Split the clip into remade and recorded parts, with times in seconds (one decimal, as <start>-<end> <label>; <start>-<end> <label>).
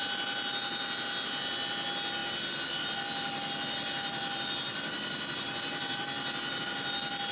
0.0-2.2 recorded; 2.2-6.6 remade; 6.6-7.3 recorded